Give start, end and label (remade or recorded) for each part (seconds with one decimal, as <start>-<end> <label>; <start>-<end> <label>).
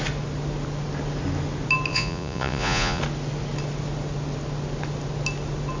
0.0-1.9 recorded; 1.9-3.0 remade; 3.0-5.8 recorded